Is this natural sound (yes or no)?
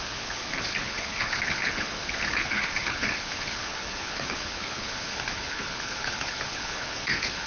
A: no